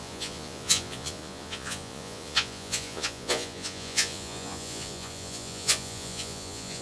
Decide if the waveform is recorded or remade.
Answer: remade